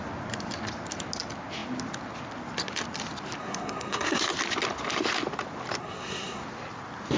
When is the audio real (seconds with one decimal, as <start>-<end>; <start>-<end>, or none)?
0.0-3.4; 4.2-5.8; 6.4-7.2